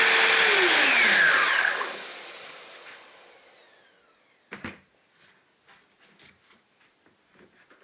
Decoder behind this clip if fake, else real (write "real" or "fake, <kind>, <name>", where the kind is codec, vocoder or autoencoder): real